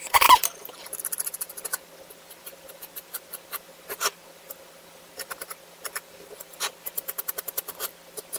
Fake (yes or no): yes